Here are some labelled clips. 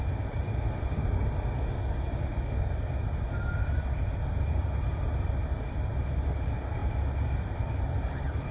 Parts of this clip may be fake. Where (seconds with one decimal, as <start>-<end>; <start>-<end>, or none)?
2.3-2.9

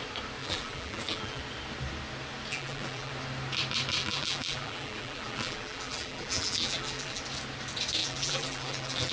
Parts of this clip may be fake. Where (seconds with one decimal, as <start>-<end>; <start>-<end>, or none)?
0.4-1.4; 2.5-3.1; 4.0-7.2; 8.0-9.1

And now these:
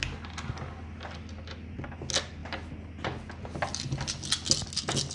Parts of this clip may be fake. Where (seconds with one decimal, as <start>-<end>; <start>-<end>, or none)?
none